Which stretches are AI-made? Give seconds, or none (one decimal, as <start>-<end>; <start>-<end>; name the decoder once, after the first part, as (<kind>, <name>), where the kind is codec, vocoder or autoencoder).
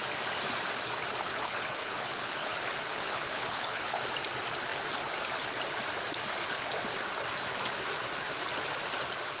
1.3-4.0 (codec, HILCodec)